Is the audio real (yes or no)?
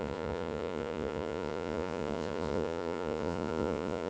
no